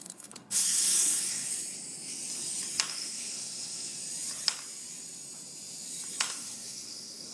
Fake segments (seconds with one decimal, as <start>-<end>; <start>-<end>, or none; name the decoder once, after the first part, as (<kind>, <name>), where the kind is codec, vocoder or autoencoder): 0.0-1.5 (codec, SNAC); 2.9-4.0; 6.3-7.3